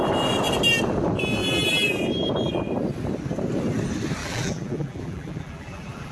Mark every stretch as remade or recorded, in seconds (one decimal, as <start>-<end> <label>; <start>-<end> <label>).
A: 0.0-1.4 recorded; 1.4-2.0 remade; 2.0-4.2 recorded; 4.2-6.1 remade